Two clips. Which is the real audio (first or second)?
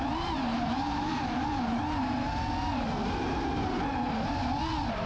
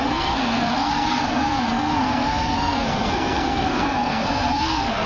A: first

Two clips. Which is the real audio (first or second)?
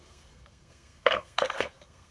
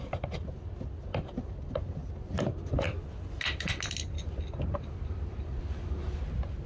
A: second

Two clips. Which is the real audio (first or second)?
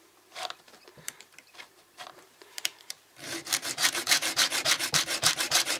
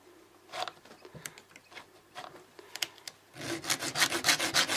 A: second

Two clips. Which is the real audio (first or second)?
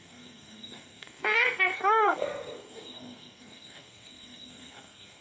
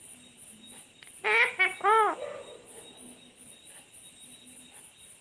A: second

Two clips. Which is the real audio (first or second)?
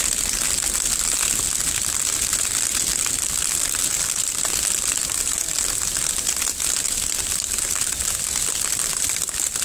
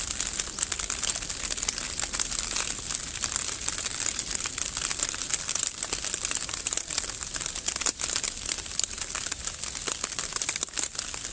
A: first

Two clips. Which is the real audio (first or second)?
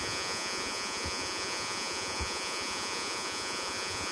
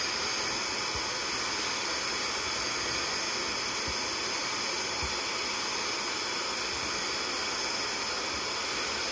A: second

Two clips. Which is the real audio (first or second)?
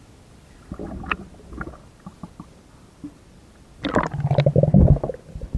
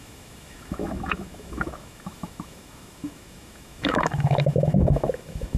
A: first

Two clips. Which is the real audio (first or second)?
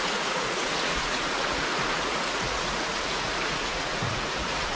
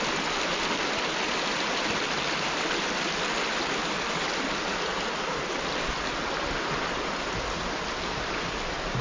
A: second